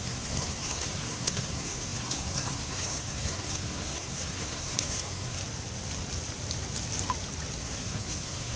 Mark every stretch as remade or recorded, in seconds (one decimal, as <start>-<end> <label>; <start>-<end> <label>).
0.0-5.4 remade; 5.4-7.6 recorded; 7.6-8.6 remade